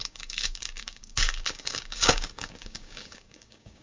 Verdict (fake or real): fake